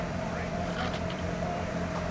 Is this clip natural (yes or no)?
no